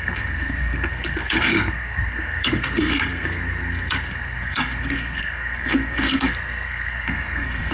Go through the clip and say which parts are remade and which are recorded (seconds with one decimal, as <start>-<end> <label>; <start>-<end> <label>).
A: 0.0-7.7 remade

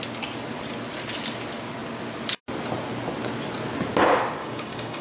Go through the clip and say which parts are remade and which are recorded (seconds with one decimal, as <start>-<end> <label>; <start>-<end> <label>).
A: 0.0-4.4 recorded; 4.4-5.0 remade

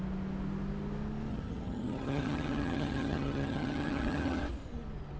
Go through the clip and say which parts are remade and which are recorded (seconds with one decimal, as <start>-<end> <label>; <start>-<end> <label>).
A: 0.0-1.3 recorded; 1.3-4.4 remade; 4.4-5.2 recorded

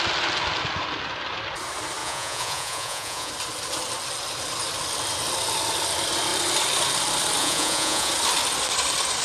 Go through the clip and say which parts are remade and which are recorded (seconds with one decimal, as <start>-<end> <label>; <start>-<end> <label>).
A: 0.0-2.0 recorded; 2.0-3.3 remade; 3.3-7.4 recorded; 7.4-8.1 remade; 8.1-9.2 recorded

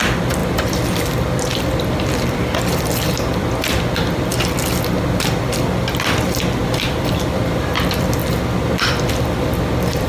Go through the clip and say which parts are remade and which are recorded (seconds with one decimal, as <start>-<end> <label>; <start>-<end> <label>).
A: 0.0-4.3 remade; 4.3-6.6 recorded; 6.6-8.2 remade; 8.2-8.9 recorded; 8.9-10.1 remade